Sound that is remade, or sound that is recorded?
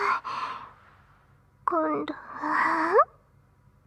recorded